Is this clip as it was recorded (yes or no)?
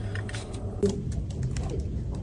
yes